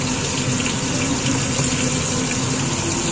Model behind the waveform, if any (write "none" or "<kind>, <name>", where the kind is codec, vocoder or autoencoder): none